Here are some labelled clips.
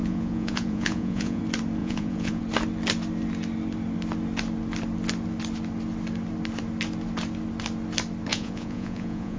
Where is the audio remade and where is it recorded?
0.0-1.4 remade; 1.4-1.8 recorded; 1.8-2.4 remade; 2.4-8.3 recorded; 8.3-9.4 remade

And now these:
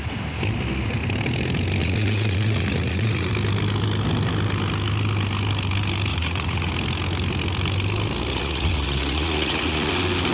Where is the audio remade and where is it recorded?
0.0-1.8 recorded; 1.8-3.3 remade; 3.3-6.1 recorded; 6.1-6.7 remade; 6.7-8.3 recorded; 8.3-9.9 remade; 9.9-10.3 recorded

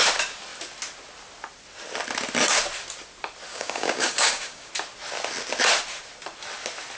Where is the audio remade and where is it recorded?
0.0-3.5 recorded; 3.5-4.7 remade; 4.7-7.0 recorded

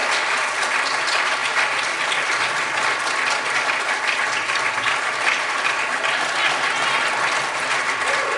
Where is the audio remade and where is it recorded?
0.0-8.4 recorded

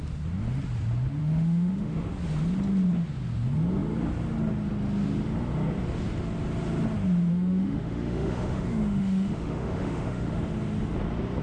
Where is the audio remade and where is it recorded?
0.0-1.2 recorded; 1.2-2.1 remade; 2.1-7.3 recorded; 7.3-10.4 remade; 10.4-11.4 recorded

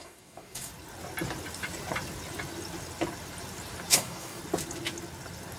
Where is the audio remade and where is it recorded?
0.0-0.7 remade; 0.7-3.9 recorded; 3.9-4.4 remade; 4.4-5.6 recorded